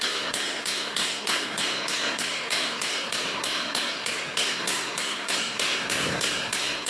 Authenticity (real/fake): fake